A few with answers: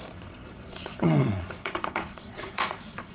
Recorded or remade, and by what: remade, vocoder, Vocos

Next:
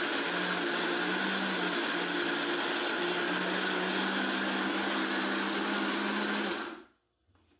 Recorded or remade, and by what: recorded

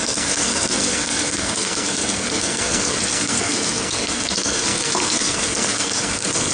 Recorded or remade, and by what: remade, codec, SNAC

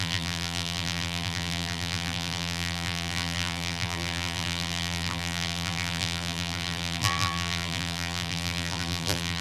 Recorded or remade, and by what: remade, vocoder, BigVGAN v2